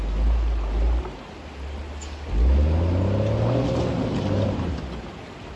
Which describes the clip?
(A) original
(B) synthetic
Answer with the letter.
A